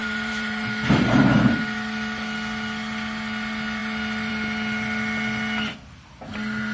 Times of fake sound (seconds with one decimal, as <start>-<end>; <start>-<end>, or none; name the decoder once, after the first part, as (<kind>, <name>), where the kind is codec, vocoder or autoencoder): 0.0-1.6 (vocoder, BigVGAN v2)